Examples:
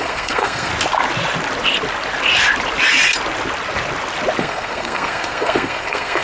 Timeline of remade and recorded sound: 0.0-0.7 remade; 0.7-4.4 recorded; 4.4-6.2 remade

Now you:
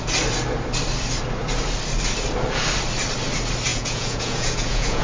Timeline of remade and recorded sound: 0.0-3.7 recorded; 3.7-5.0 remade

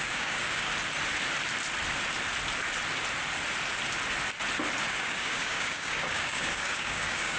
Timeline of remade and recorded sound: 0.0-0.7 remade; 0.7-4.9 recorded; 4.9-7.4 remade

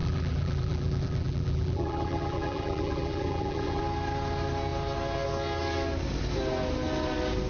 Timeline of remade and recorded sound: 0.0-3.8 remade; 3.8-7.5 recorded

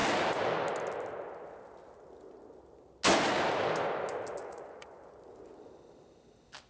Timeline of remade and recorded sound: 0.0-4.4 recorded; 4.4-5.0 remade; 5.0-6.7 recorded

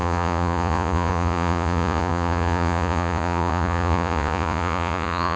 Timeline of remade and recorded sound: 0.0-5.4 remade

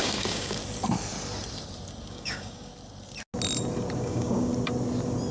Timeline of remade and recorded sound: 0.0-0.6 remade; 0.6-2.1 recorded; 2.1-2.7 remade; 2.7-4.0 recorded; 4.0-4.5 remade; 4.5-5.3 recorded

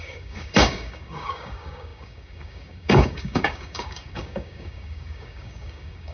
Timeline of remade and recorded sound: 0.0-6.1 remade